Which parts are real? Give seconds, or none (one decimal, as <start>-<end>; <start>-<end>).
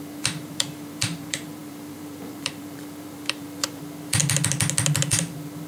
4.2-5.1